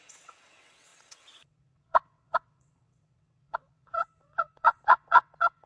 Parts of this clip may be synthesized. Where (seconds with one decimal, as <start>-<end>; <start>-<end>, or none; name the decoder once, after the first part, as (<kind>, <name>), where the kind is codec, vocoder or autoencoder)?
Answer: 0.0-5.7 (vocoder, WaveNeXt)